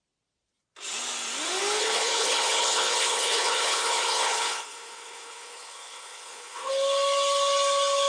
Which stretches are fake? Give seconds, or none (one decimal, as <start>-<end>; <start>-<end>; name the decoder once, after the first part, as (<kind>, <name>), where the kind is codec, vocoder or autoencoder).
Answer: 1.8-6.7 (codec, HILCodec)